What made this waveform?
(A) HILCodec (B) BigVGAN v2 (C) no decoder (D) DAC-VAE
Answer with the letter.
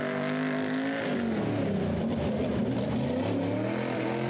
C